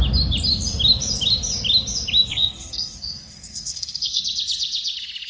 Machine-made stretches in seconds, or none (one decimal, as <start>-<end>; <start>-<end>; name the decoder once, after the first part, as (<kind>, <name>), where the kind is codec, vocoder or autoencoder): 2.3-4.2 (codec, SNAC)